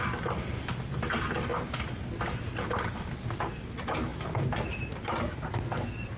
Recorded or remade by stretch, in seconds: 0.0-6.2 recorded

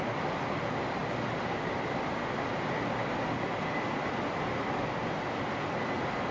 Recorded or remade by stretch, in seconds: 0.0-6.3 recorded

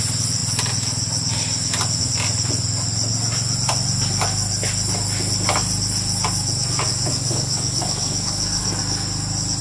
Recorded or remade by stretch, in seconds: 0.0-6.9 recorded; 6.9-8.8 remade; 8.8-9.6 recorded